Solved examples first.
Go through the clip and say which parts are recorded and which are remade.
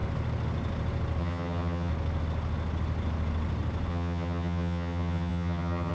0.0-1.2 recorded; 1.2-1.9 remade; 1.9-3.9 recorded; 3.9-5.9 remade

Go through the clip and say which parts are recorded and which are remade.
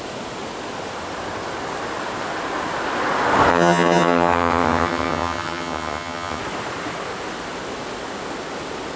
0.0-3.5 recorded; 3.5-6.4 remade; 6.4-9.0 recorded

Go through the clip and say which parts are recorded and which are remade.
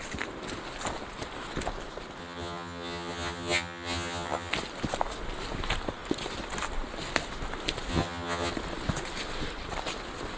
0.0-2.2 recorded; 2.2-4.5 remade; 4.5-7.9 recorded; 7.9-8.5 remade; 8.5-10.4 recorded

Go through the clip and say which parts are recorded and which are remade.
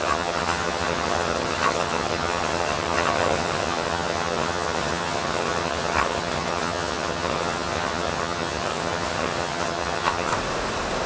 0.0-10.3 remade; 10.3-11.1 recorded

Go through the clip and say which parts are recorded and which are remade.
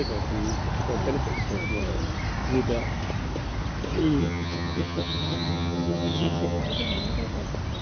0.0-4.2 recorded; 4.2-6.6 remade; 6.6-7.8 recorded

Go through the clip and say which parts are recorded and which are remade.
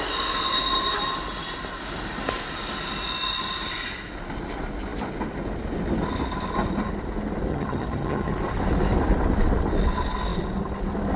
0.0-7.5 recorded; 7.5-8.3 remade; 8.3-11.2 recorded